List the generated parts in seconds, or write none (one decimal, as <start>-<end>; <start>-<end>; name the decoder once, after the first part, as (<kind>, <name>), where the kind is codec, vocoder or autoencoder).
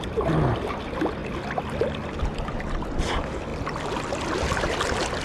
none